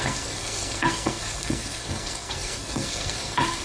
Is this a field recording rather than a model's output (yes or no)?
no